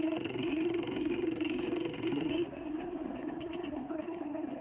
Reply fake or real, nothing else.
fake